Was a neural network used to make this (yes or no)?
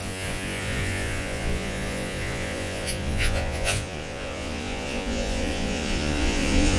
yes